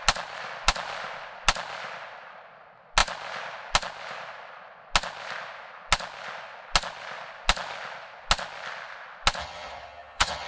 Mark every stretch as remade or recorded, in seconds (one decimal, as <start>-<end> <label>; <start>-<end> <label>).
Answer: 0.0-9.4 recorded; 9.4-10.5 remade